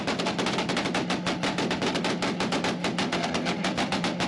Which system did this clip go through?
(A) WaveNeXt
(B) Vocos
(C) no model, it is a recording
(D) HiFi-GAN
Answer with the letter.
C